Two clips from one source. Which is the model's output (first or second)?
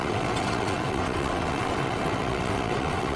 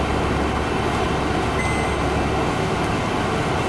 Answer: first